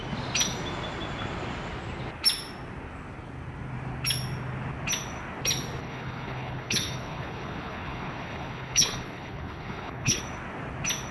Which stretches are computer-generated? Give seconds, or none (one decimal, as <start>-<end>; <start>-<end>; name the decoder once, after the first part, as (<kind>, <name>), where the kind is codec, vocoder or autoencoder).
5.8-10.2 (codec, HILCodec)